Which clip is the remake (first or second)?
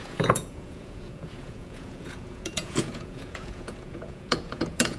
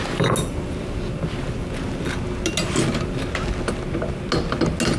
first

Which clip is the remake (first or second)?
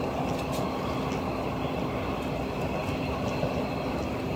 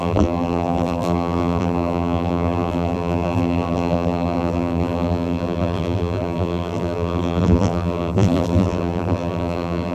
second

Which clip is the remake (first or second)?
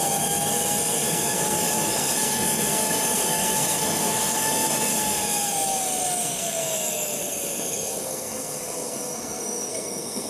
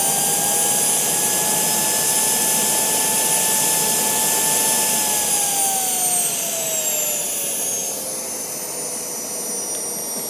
first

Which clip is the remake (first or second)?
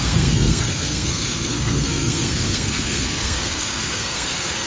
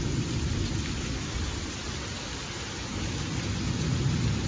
first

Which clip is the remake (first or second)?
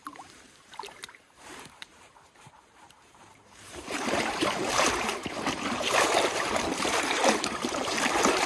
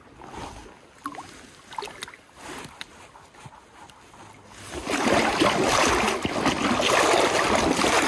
first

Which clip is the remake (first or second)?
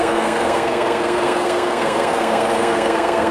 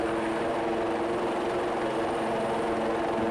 first